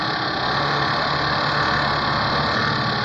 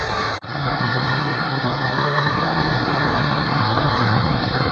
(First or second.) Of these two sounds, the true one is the first